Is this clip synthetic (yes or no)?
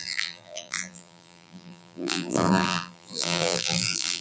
yes